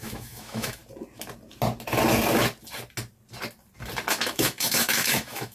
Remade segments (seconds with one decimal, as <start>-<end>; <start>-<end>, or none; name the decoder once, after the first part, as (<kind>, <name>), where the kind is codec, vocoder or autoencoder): 0.0-0.8 (autoencoder, DAC-VAE); 4.1-5.5